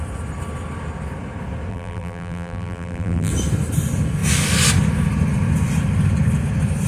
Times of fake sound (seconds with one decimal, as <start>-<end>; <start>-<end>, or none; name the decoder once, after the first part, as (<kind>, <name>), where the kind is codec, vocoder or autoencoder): 1.7-3.3 (vocoder, BigVGAN v2)